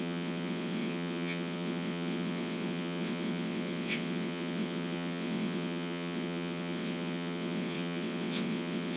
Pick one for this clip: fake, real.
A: fake